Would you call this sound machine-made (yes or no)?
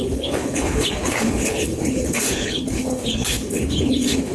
yes